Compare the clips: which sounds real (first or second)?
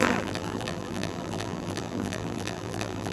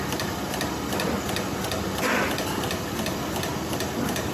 second